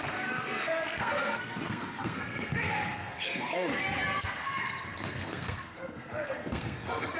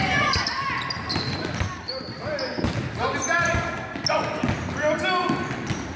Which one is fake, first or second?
first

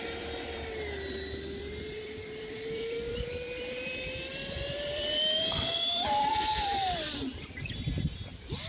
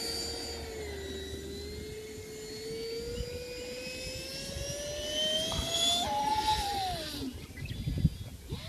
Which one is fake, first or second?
first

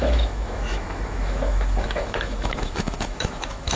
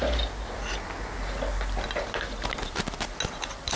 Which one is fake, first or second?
first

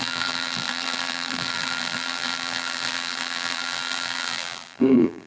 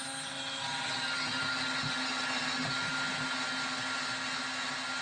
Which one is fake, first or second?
first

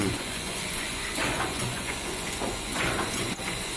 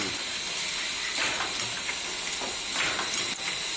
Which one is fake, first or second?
first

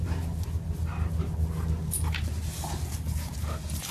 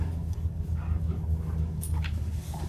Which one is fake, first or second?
second